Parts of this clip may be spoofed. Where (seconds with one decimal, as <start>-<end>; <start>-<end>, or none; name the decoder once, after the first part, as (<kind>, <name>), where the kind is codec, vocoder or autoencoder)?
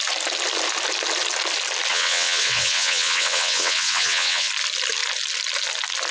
1.9-4.5 (vocoder, WaveNeXt)